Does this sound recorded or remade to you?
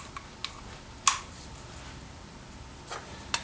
recorded